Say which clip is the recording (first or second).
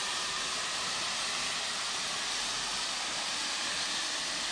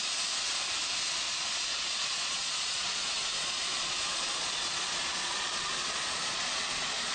first